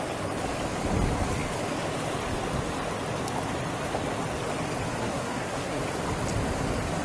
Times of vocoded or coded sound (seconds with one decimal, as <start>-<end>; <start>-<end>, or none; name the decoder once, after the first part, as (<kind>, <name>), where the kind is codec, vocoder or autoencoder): 5.0-5.8 (codec, SNAC)